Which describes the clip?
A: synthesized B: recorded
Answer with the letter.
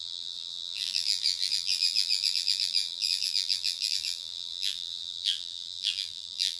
A